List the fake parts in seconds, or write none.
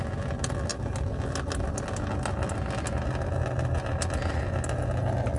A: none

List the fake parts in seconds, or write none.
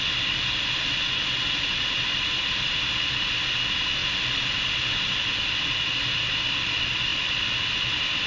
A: none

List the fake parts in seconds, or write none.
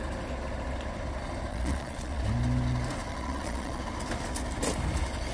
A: 1.5-2.2 (vocoder, Vocos); 3.1-3.8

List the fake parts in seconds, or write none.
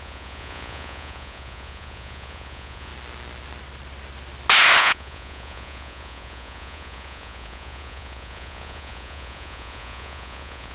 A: 0.0-2.9 (vocoder, Vocos); 4.8-10.7